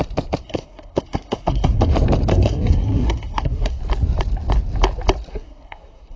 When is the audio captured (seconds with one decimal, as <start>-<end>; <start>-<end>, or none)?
0.0-0.4; 1.9-2.3; 3.8-5.3